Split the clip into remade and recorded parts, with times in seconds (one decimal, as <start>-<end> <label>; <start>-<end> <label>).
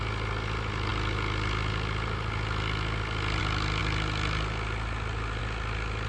0.0-6.1 recorded